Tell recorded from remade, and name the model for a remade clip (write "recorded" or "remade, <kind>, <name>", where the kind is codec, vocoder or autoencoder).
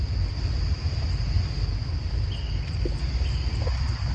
recorded